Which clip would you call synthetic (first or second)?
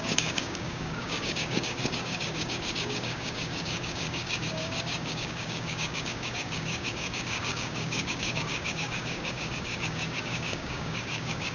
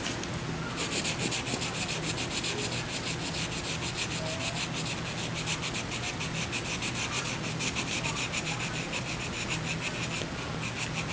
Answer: first